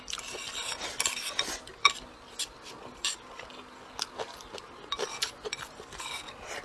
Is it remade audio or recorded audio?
recorded